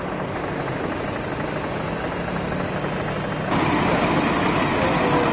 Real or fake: real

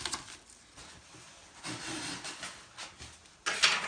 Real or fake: real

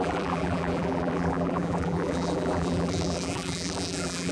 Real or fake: fake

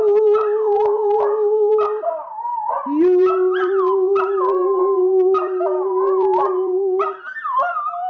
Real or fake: fake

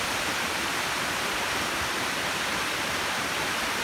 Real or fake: real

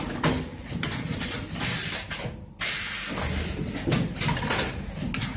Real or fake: real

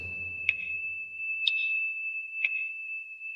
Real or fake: fake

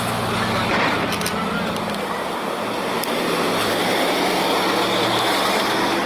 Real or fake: real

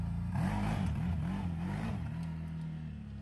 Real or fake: real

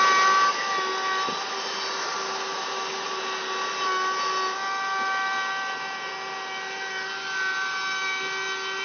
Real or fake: real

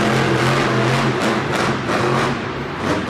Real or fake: real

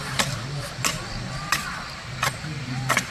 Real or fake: real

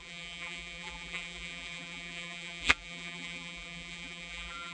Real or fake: fake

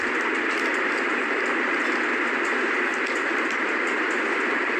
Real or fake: fake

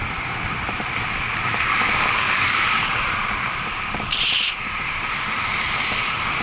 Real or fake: fake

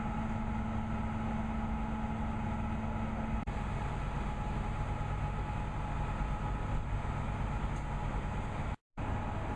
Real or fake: real